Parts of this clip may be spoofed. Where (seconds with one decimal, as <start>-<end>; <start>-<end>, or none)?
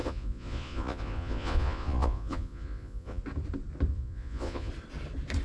0.0-3.2; 3.9-4.7